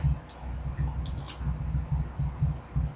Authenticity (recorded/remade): recorded